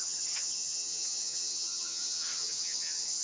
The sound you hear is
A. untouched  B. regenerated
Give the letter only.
B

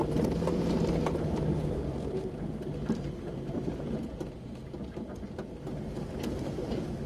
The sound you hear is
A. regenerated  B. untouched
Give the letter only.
B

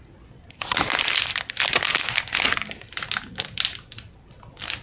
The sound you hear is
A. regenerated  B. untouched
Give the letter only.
B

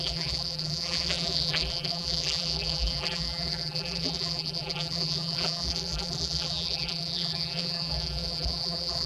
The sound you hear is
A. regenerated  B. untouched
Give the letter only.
A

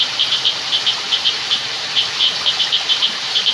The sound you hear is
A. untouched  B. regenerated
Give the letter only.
B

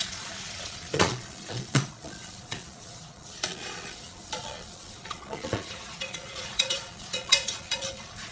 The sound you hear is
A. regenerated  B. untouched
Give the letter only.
A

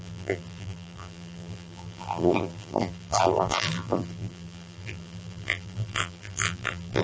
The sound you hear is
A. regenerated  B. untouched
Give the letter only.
A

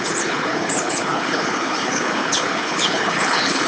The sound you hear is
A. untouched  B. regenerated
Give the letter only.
B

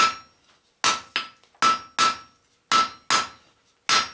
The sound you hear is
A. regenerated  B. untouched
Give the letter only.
B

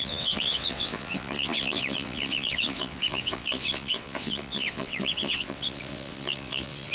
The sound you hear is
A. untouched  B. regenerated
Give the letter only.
B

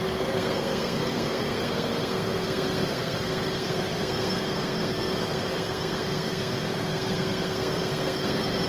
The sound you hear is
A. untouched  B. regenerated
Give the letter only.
B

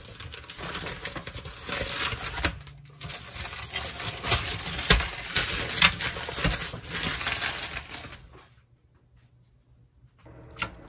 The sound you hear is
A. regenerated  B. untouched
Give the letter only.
B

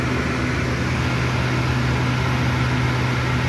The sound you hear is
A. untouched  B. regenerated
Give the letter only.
A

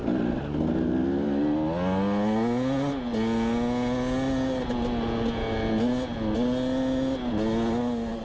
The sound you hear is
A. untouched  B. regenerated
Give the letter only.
A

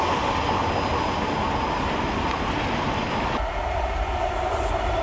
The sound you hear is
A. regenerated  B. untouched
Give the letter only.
B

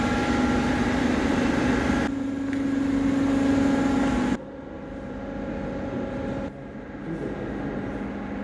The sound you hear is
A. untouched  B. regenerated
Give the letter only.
A